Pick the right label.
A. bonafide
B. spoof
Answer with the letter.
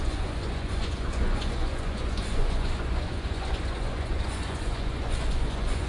B